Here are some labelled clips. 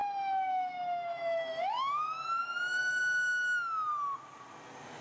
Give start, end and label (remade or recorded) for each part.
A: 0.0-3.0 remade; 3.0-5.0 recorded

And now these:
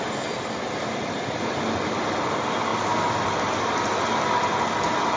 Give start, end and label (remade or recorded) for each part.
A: 0.0-5.2 recorded